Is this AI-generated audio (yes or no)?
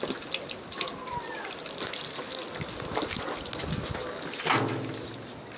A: no